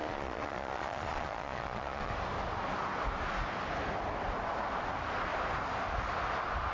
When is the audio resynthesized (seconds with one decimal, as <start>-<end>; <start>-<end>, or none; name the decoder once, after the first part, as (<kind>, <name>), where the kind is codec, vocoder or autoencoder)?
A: 0.0-2.1 (vocoder, Vocos)